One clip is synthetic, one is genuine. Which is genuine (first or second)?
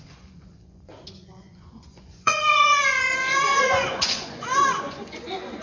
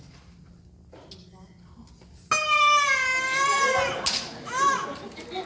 second